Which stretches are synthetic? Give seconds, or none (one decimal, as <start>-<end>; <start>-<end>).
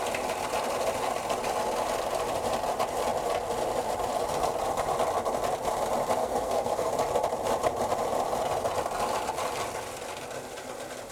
6.2-6.9